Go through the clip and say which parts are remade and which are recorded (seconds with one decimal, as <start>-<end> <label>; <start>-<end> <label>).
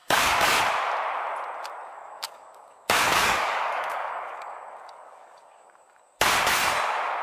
0.0-0.6 remade; 0.6-1.9 recorded; 1.9-6.2 remade; 6.2-7.2 recorded